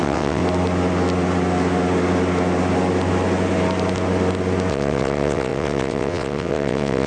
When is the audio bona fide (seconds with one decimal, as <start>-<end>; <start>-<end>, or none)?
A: 0.4-4.7